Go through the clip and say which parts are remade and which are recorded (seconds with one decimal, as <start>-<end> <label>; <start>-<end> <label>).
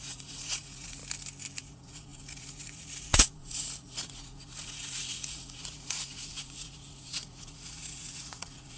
0.0-1.0 remade; 1.0-1.6 recorded; 1.6-8.8 remade